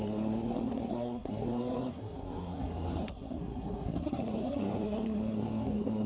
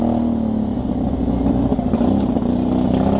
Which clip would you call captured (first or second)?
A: second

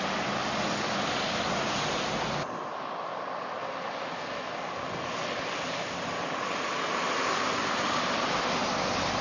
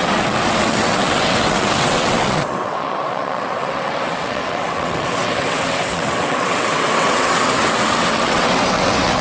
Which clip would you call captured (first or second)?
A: first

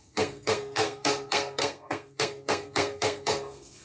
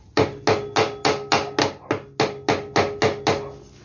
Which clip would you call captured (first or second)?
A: second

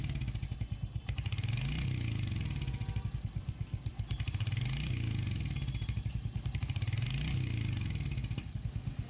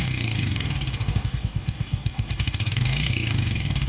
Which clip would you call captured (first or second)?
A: first